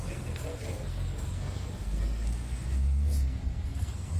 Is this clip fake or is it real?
fake